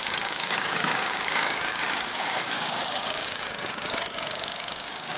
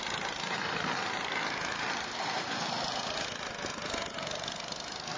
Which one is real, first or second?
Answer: second